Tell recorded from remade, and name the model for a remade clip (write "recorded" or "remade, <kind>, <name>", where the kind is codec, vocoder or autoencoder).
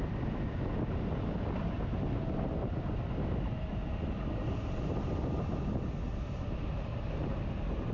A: recorded